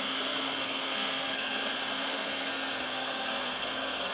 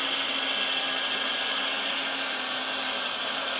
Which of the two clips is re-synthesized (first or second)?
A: first